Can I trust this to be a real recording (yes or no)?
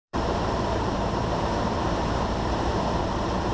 no